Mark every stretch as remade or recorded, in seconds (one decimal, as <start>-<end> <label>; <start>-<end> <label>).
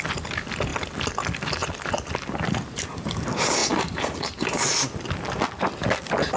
0.0-3.6 recorded; 3.6-4.7 remade; 4.7-6.4 recorded